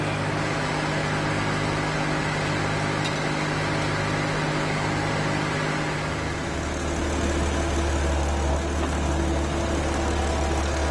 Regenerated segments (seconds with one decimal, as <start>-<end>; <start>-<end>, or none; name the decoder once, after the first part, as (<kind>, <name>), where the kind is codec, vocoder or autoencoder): none